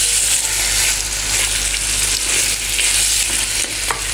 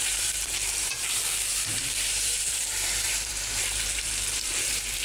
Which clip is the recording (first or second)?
first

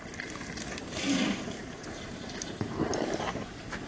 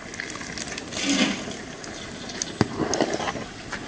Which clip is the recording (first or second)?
second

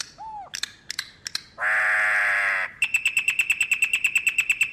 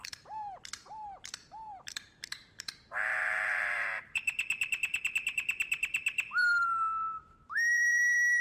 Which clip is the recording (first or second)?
first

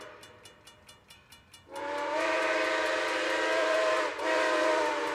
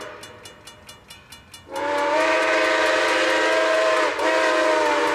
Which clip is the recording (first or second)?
second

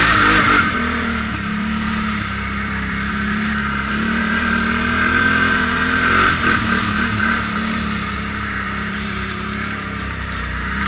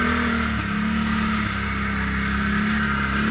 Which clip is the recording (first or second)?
second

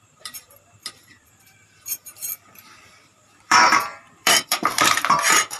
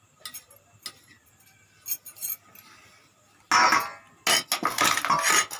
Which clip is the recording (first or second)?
second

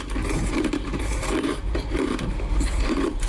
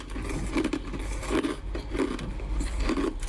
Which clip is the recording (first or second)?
second